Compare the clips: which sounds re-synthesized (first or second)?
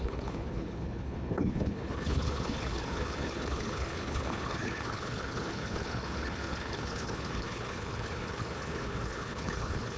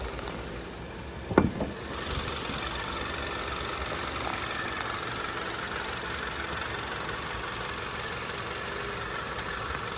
first